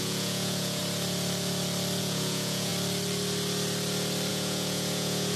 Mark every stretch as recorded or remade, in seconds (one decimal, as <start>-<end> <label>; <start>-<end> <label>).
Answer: 0.0-0.8 remade; 0.8-2.0 recorded; 2.0-2.7 remade; 2.7-4.3 recorded; 4.3-5.4 remade